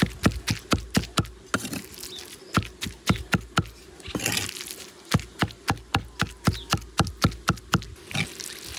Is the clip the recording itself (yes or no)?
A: yes